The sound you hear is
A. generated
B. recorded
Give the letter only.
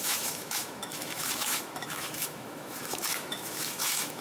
A